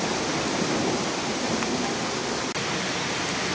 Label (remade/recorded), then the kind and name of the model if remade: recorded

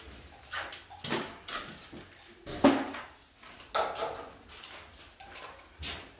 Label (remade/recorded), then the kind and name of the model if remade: recorded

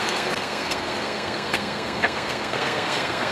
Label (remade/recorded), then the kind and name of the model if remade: remade, codec, SNAC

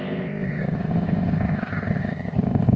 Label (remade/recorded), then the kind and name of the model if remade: remade, codec, ZipCodec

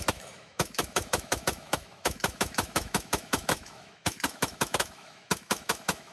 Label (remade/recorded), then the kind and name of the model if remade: remade, autoencoder, DAC-VAE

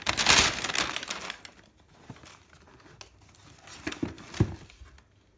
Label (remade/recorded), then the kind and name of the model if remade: recorded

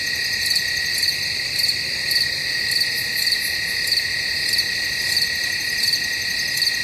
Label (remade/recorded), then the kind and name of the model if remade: recorded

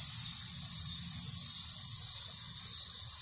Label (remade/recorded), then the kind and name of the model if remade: recorded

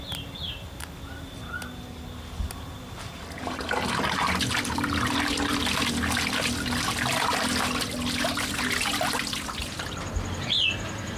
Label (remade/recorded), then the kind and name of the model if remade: remade, vocoder, BigVGAN v2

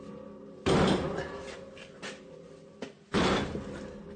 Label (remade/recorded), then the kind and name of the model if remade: recorded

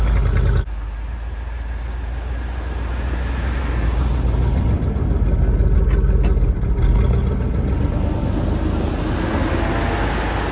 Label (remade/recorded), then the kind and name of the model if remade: recorded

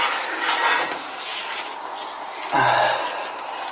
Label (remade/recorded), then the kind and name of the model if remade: recorded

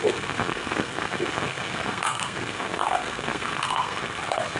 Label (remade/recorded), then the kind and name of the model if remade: remade, codec, SNAC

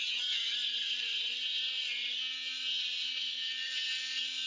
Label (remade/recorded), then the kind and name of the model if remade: remade, vocoder, HiFi-GAN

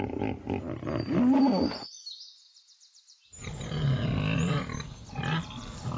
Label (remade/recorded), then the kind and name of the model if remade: recorded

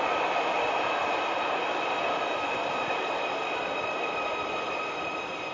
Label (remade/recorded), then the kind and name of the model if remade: recorded